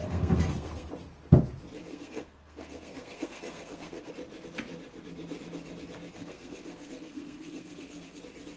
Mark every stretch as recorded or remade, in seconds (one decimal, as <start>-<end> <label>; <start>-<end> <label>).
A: 0.0-0.9 remade; 0.9-1.9 recorded; 1.9-4.1 remade; 4.1-6.2 recorded; 6.2-8.2 remade; 8.2-8.6 recorded